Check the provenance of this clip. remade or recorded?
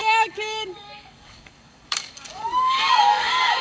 remade